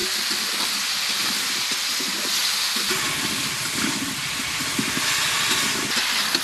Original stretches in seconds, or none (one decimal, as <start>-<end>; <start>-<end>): 0.0-2.4; 4.4-6.4